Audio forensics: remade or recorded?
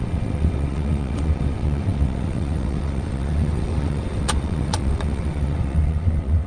remade